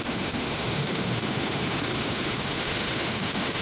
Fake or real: fake